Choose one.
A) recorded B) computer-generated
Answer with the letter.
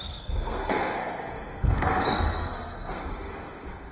B